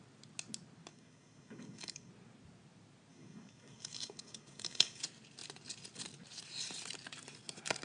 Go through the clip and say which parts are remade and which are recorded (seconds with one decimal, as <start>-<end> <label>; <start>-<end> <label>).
0.0-0.9 recorded; 0.9-2.1 remade; 2.1-3.1 recorded; 3.1-5.0 remade; 5.0-7.8 recorded